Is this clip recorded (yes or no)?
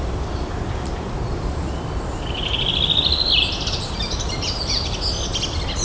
yes